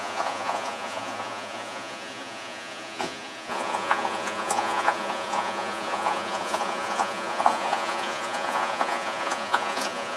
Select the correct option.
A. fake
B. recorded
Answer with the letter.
A